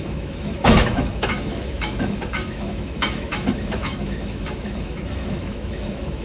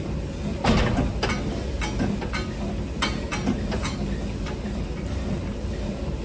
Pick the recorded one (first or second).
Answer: second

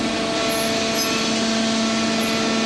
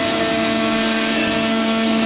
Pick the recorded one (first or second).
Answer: first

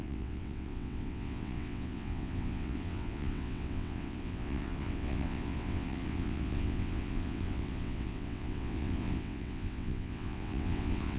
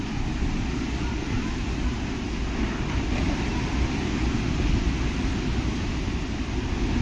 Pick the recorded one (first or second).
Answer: second